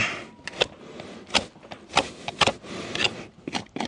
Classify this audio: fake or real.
real